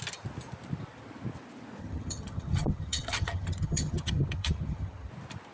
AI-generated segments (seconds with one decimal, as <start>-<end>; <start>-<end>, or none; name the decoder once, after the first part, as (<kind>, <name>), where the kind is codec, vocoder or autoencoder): 1.8-5.1 (vocoder, HiFi-GAN)